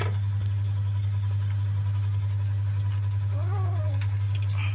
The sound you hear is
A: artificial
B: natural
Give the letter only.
B